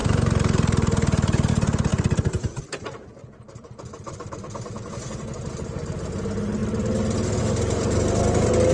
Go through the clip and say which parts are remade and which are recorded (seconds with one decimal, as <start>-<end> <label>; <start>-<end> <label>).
0.0-1.5 remade; 1.5-1.9 recorded; 1.9-4.9 remade; 4.9-8.7 recorded